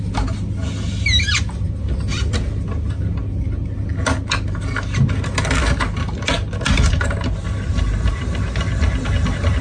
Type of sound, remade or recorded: recorded